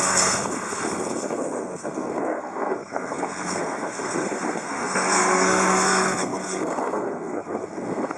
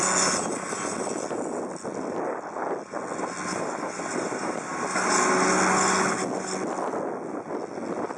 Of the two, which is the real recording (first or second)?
second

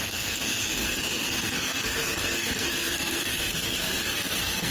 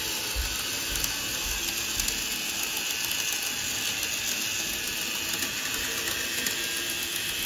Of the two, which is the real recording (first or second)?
second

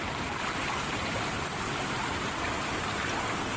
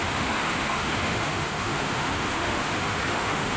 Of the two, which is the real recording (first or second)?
first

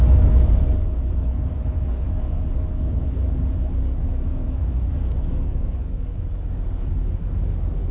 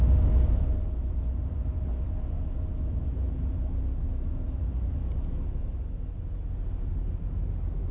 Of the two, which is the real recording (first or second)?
second